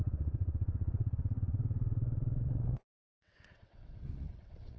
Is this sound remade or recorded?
remade